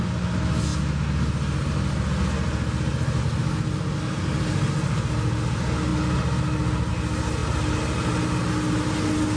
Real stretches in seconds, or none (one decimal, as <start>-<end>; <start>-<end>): 0.0-9.4